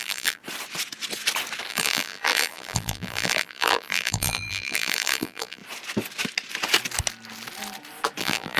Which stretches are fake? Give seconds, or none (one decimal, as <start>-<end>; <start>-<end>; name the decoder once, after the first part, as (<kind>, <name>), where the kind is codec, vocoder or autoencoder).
0.0-0.4 (vocoder, BigVGAN v2); 1.7-5.6; 8.2-8.6